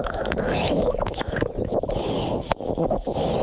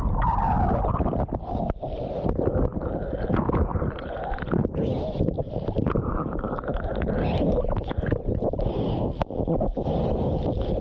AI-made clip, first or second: first